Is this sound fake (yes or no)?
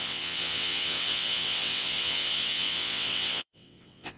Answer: yes